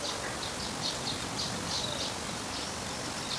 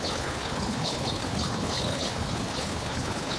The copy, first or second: second